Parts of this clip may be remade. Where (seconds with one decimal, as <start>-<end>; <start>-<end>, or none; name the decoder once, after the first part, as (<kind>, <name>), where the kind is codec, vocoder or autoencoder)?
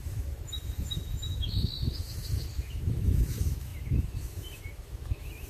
0.0-5.5 (autoencoder, DAC-VAE)